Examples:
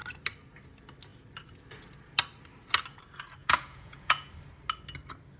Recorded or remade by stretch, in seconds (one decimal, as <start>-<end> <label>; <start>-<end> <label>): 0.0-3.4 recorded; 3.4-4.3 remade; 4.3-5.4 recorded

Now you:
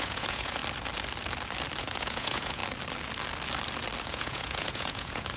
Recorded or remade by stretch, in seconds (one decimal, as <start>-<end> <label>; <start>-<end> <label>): 0.0-0.6 remade; 0.6-1.8 recorded; 1.8-2.6 remade; 2.6-4.1 recorded; 4.1-5.4 remade

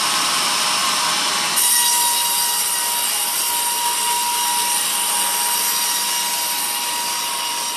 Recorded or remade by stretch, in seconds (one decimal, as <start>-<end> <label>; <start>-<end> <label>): 0.0-7.8 recorded

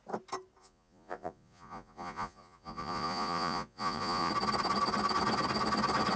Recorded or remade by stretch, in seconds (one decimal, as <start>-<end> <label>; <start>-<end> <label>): 0.0-0.6 recorded; 0.6-4.3 remade; 4.3-6.2 recorded

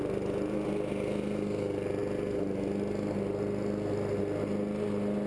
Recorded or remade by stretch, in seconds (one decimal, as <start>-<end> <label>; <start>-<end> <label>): 0.0-5.3 recorded

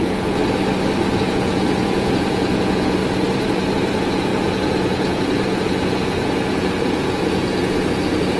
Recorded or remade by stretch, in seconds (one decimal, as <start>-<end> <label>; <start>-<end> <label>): 0.0-0.4 remade; 0.4-1.1 recorded; 1.1-3.0 remade; 3.0-3.8 recorded; 3.8-8.4 remade